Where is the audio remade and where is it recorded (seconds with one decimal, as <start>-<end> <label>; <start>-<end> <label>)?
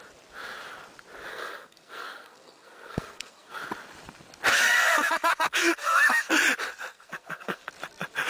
0.0-1.3 recorded; 1.3-3.6 remade; 3.6-4.5 recorded; 4.5-6.3 remade; 6.3-6.9 recorded; 6.9-7.7 remade; 7.7-8.3 recorded